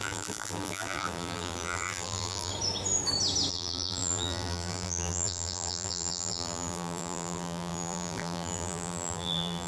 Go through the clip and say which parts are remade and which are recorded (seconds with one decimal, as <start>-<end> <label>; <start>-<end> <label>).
0.0-2.5 remade; 2.5-3.5 recorded; 3.5-9.7 remade